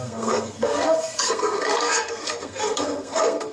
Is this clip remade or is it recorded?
remade